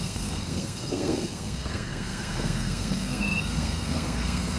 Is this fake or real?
fake